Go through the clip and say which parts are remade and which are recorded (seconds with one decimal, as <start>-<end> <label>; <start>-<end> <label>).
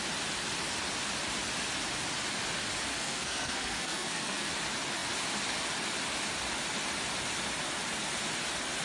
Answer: 0.0-2.9 recorded; 2.9-4.5 remade; 4.5-8.8 recorded